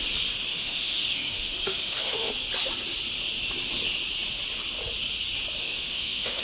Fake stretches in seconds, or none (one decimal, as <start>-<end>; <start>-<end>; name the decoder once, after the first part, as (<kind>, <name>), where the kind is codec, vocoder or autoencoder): 0.5-2.3 (autoencoder, DAC-VAE); 5.6-6.4